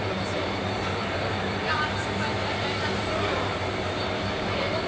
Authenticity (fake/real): fake